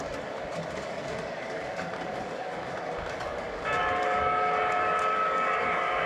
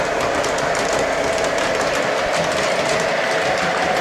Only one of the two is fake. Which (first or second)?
first